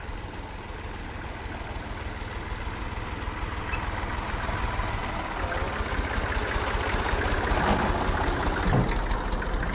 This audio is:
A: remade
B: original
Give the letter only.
B